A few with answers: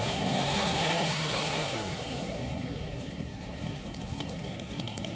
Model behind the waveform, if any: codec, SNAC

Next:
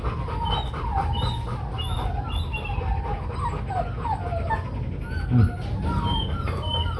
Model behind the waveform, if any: none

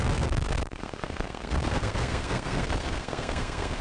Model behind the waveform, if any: codec, SNAC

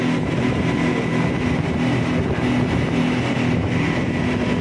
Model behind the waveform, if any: none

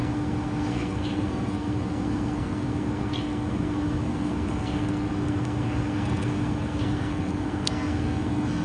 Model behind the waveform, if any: codec, SNAC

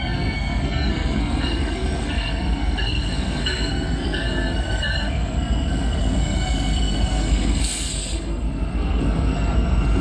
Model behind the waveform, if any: codec, SNAC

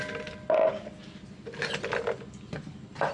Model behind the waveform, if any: none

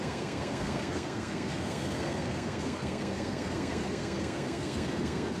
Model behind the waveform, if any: codec, SNAC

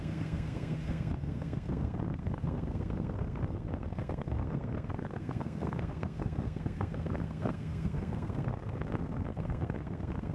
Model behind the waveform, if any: codec, SNAC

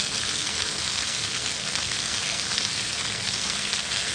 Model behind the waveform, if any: codec, SNAC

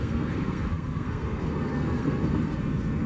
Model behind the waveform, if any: codec, SNAC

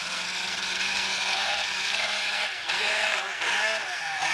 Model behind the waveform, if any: codec, SNAC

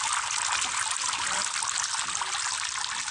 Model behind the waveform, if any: none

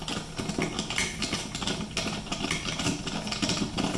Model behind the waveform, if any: none